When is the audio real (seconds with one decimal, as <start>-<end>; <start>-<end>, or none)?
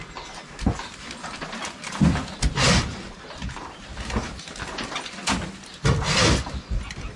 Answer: 0.0-7.2